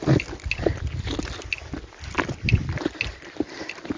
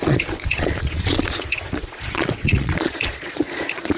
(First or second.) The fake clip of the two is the second